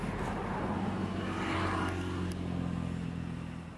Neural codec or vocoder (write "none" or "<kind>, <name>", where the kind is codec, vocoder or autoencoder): none